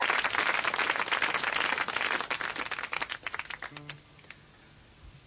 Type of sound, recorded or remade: recorded